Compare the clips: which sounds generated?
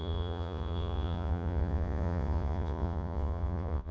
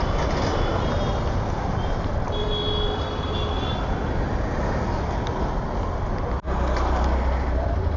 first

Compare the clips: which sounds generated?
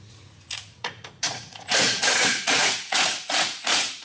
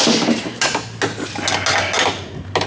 first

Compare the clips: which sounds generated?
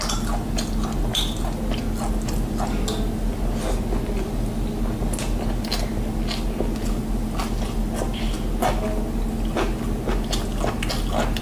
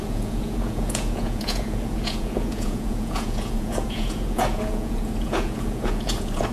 second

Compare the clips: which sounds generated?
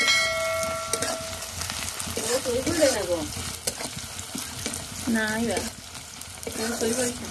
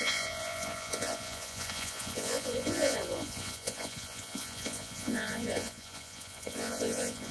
second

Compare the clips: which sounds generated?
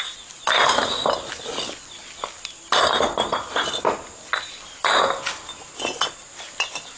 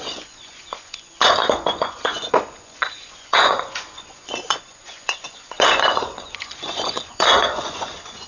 second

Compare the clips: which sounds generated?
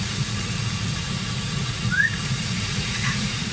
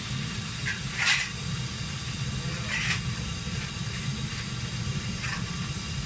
first